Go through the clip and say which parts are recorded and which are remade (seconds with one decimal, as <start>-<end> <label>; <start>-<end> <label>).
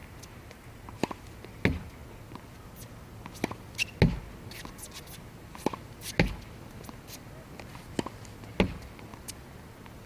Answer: 0.0-1.2 remade; 1.2-10.1 recorded